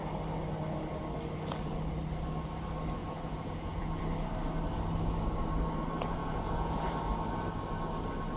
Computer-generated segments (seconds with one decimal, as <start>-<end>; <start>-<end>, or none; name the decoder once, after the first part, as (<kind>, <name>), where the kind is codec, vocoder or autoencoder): 3.0-4.0 (vocoder, Vocos); 6.2-6.8